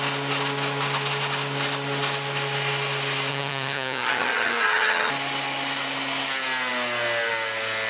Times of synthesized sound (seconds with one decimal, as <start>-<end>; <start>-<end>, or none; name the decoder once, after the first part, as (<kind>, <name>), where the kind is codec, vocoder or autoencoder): 3.3-5.1 (vocoder, HiFi-GAN)

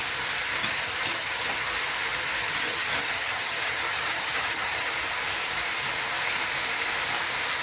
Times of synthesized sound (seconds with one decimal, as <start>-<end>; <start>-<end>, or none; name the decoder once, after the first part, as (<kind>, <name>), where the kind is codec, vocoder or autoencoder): 0.6-1.5 (vocoder, HiFi-GAN); 2.4-4.9

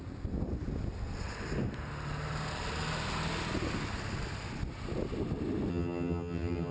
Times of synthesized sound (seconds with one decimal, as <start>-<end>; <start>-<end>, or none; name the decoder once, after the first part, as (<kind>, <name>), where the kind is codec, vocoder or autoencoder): 5.7-6.7 (vocoder, HiFi-GAN)

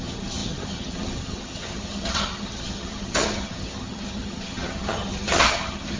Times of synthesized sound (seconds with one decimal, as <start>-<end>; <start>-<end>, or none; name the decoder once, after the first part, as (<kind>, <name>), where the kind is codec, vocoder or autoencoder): 0.0-6.0 (vocoder, HiFi-GAN)

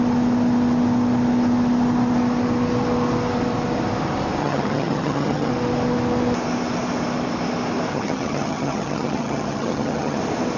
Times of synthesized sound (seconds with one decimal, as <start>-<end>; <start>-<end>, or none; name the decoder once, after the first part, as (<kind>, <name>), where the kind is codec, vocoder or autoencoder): 4.4-5.5 (vocoder, HiFi-GAN); 7.9-10.2

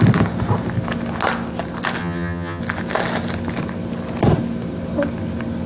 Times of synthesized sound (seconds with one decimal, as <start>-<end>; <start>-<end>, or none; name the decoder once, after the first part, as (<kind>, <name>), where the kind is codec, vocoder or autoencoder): 2.0-2.6 (vocoder, HiFi-GAN)

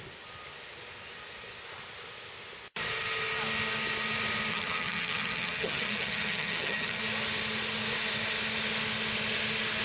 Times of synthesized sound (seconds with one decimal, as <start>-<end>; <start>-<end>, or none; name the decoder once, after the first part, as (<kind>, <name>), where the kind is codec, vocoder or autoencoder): 4.5-7.0 (vocoder, HiFi-GAN)